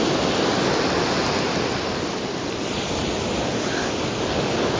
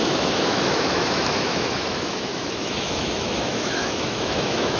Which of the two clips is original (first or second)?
first